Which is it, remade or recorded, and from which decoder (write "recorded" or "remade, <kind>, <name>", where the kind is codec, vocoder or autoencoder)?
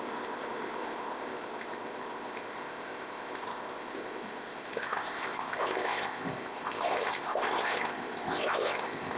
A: remade, codec, ZipCodec